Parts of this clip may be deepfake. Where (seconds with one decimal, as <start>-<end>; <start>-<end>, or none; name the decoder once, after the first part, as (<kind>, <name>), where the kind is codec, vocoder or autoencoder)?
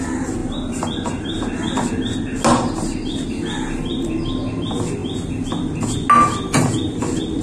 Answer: none